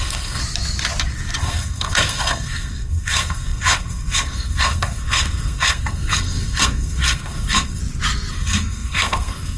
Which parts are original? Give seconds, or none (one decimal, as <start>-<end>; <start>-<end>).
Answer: 0.4-1.4; 7.8-8.3